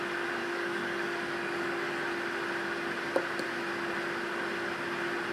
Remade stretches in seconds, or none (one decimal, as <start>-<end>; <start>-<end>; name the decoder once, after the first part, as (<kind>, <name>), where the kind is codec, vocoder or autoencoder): 0.4-1.9 (codec, DAC)